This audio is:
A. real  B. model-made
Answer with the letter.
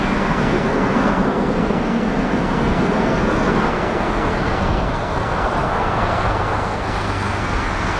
B